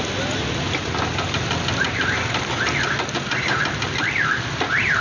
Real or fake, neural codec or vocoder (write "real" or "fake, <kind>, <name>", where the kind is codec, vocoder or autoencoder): real